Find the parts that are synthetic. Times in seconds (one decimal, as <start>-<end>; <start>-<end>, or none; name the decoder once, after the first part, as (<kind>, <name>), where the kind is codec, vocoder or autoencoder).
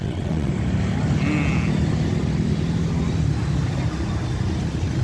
0.0-0.5 (vocoder, WaveNeXt)